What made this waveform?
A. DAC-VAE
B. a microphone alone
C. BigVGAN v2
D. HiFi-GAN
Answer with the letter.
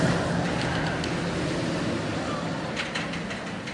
B